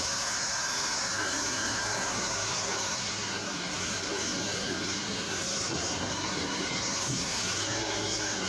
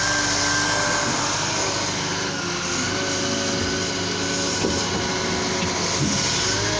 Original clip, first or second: second